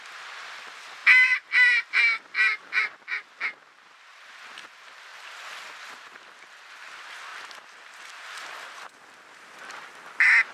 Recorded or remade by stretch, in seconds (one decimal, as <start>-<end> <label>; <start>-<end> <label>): 0.0-10.5 recorded